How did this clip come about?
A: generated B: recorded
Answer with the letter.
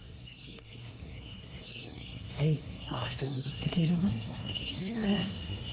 A